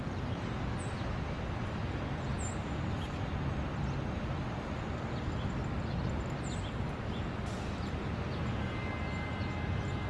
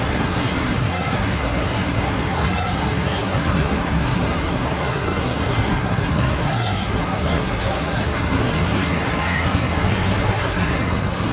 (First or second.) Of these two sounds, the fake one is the second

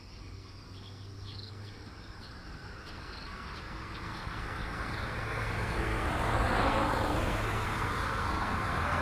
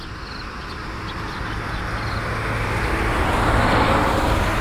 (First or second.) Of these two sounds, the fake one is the first